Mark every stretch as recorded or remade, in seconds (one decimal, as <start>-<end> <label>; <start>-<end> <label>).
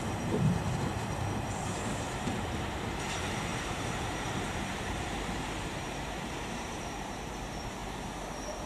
0.0-8.7 remade